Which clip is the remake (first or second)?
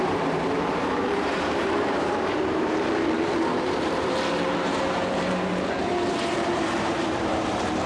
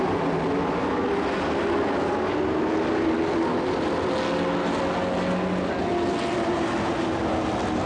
first